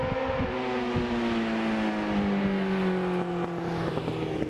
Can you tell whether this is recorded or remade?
recorded